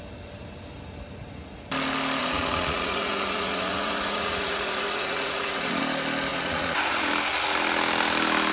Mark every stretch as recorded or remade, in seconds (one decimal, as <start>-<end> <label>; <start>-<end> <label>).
0.0-2.2 recorded; 2.2-5.8 remade; 5.8-6.3 recorded; 6.3-7.1 remade; 7.1-8.5 recorded